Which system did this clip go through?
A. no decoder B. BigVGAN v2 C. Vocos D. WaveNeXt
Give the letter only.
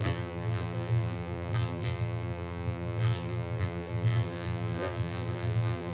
B